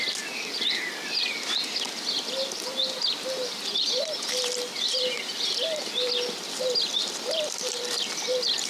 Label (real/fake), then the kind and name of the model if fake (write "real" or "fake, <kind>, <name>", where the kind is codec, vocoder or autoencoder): fake, vocoder, BigVGAN v2